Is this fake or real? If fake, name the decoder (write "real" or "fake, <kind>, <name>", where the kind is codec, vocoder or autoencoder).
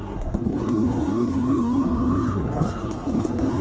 fake, codec, SNAC